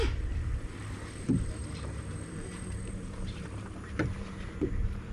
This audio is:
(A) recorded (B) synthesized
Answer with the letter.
B